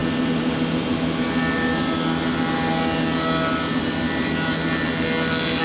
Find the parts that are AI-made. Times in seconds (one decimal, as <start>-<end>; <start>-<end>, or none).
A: none